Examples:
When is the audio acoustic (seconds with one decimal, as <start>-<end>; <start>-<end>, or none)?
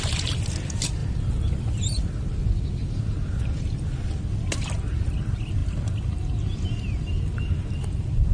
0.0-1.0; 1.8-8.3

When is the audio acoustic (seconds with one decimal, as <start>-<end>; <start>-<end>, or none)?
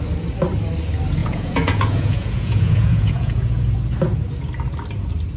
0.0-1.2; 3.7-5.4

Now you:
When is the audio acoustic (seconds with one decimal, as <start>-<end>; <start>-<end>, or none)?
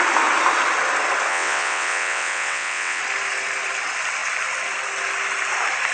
0.0-1.3; 3.0-5.9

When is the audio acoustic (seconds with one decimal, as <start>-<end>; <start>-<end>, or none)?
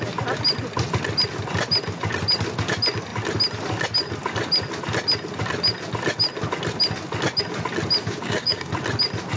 0.0-8.0; 8.7-9.4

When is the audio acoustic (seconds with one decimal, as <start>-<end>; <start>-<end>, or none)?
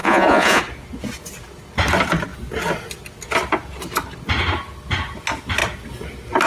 0.6-6.5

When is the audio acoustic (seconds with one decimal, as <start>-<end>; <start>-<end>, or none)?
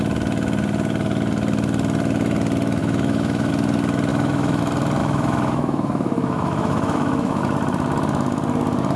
0.0-2.8; 3.5-4.1; 4.6-5.0; 7.4-9.0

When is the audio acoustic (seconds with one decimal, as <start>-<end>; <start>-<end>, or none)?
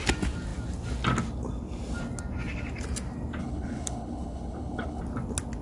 0.0-3.4; 5.0-5.6